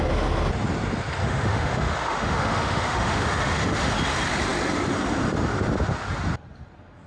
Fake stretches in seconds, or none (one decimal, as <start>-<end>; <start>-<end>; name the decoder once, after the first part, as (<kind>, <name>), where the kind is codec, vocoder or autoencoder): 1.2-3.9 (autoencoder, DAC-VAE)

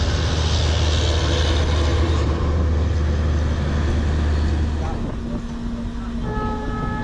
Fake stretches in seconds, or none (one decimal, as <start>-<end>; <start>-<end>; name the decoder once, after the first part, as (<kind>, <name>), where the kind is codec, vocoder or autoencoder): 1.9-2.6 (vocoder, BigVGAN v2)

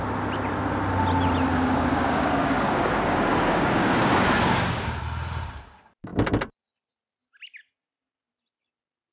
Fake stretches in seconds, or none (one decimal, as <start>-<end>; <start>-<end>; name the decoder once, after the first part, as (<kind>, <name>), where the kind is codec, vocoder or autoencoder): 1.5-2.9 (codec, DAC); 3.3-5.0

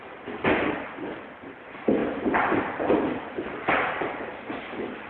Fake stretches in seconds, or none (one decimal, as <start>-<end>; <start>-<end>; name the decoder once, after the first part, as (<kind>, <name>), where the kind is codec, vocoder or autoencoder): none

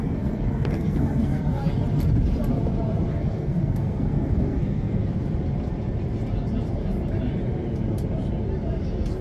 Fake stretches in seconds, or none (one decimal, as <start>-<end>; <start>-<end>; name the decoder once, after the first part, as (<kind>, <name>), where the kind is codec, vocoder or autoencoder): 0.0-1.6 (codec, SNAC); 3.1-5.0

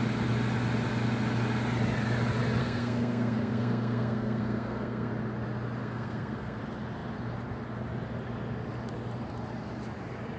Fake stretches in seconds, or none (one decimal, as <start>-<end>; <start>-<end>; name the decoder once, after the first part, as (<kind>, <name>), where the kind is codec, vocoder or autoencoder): 2.6-5.1 (codec, SNAC); 5.8-6.6